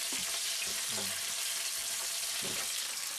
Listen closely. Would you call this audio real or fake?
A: fake